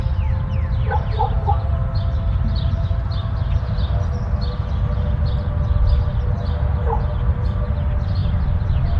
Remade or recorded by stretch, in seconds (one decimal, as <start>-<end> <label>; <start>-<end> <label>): 0.0-9.0 recorded